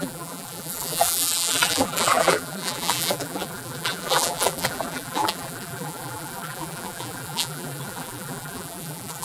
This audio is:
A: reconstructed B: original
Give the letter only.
A